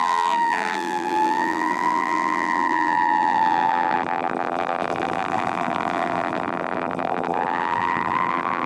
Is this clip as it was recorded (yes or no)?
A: no